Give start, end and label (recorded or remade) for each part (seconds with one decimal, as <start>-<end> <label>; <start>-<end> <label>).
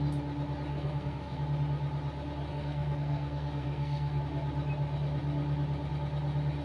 0.0-0.7 recorded; 0.7-1.4 remade; 1.4-2.5 recorded; 2.5-4.2 remade; 4.2-6.6 recorded